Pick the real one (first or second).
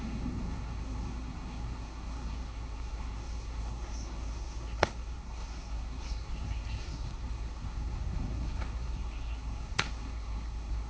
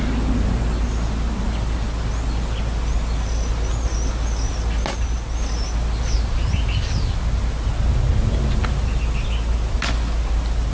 second